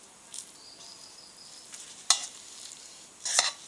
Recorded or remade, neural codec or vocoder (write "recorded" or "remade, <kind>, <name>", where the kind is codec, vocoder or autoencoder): recorded